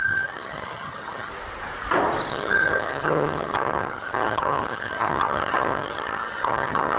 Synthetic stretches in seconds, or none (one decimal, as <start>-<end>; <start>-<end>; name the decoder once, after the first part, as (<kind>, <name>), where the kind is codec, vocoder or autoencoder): 0.0-1.3 (vocoder, HiFi-GAN); 2.3-7.0